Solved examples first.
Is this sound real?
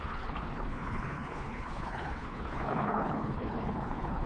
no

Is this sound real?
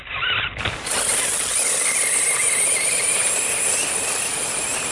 yes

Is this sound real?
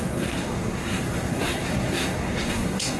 no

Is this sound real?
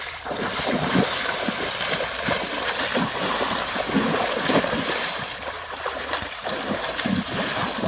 no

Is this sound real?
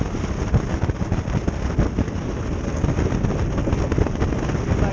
yes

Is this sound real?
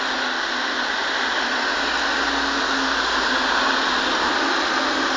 yes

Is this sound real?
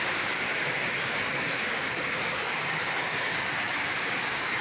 no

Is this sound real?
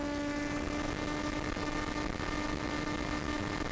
yes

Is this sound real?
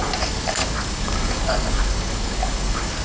no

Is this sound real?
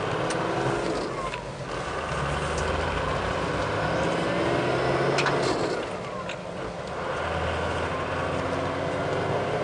yes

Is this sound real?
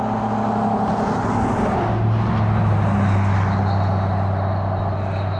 yes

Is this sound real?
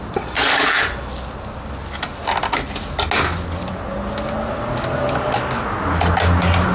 yes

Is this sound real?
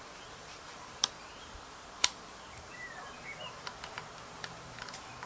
no